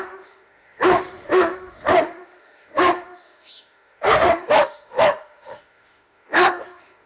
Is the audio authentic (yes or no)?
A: no